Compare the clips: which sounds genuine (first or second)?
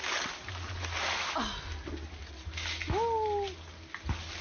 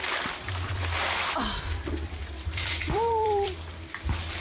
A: first